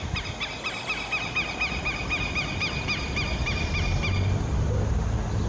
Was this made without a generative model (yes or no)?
yes